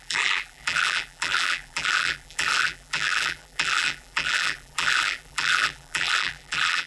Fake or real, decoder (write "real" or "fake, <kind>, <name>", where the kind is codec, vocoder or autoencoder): fake, vocoder, BigVGAN v2